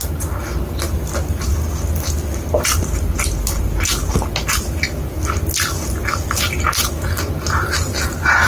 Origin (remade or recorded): recorded